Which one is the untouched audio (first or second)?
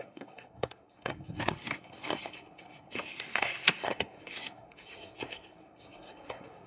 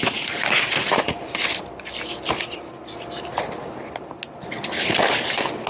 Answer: second